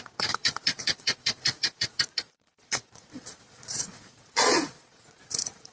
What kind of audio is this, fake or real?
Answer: fake